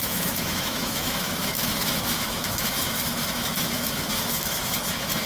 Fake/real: fake